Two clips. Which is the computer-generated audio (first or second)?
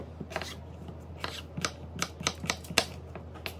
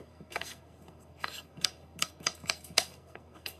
second